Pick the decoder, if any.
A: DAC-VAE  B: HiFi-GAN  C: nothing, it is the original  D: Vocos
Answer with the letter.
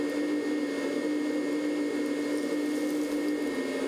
C